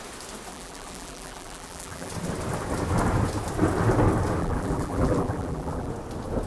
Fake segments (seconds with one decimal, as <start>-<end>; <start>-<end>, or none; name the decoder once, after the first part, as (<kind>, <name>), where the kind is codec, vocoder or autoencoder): 0.5-2.1 (vocoder, BigVGAN v2); 4.4-5.9